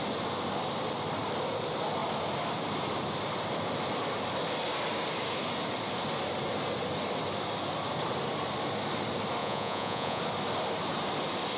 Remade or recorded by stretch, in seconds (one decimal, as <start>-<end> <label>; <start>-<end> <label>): 0.0-9.4 recorded; 9.4-10.2 remade; 10.2-11.6 recorded